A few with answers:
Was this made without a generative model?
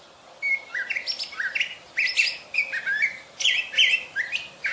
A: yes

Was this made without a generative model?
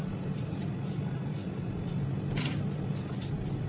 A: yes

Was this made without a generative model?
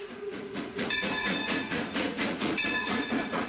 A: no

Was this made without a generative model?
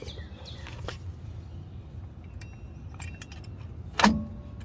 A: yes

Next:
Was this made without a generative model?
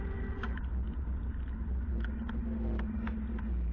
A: yes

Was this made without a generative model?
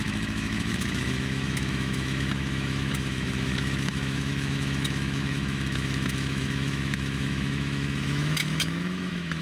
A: no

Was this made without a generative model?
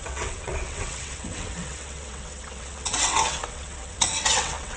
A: no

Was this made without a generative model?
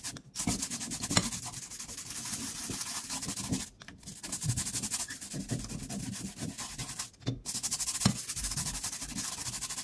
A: yes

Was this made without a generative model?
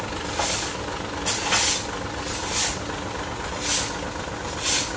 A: yes